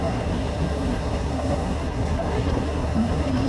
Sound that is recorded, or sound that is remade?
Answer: remade